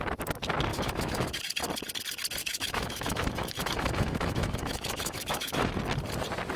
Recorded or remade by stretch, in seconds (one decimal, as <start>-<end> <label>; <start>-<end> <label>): 0.0-0.7 recorded; 0.7-1.4 remade; 1.4-2.4 recorded; 2.4-5.8 remade; 5.8-6.6 recorded